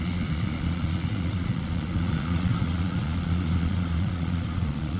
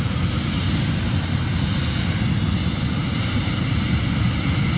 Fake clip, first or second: first